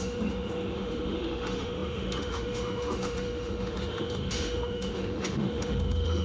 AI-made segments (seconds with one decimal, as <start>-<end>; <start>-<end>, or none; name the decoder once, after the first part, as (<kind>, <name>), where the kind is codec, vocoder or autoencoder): 0.0-6.2 (autoencoder, DAC-VAE)